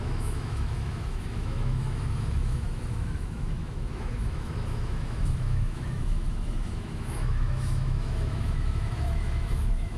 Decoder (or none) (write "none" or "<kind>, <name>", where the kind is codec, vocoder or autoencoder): autoencoder, DAC-VAE